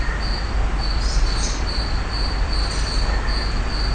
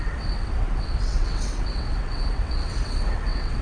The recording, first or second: first